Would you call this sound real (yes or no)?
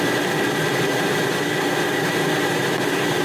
yes